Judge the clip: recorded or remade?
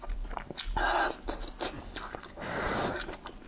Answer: recorded